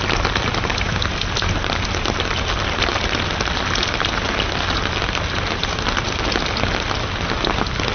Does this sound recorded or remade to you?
recorded